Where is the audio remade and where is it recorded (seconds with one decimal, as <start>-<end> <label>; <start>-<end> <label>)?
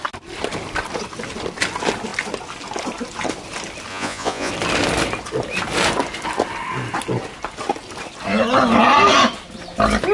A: 0.0-3.9 recorded; 3.9-4.5 remade; 4.5-10.1 recorded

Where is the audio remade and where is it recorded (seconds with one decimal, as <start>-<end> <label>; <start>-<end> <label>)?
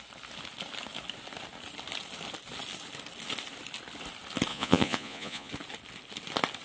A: 0.0-4.5 recorded; 4.5-5.5 remade; 5.5-6.6 recorded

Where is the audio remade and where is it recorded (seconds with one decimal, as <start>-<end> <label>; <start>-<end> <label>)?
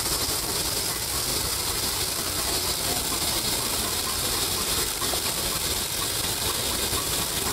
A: 0.0-7.5 recorded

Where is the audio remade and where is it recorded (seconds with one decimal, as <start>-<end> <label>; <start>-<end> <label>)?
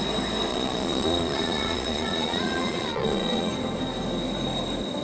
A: 0.0-0.5 recorded; 0.5-3.5 remade; 3.5-5.0 recorded